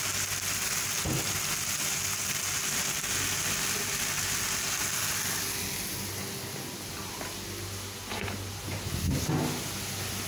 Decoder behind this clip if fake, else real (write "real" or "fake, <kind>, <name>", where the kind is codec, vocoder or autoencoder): real